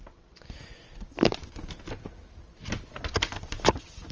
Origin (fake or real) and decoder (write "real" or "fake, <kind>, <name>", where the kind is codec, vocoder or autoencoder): real